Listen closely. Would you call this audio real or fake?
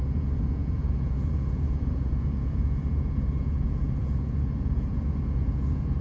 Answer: fake